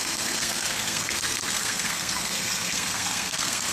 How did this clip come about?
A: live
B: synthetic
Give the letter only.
B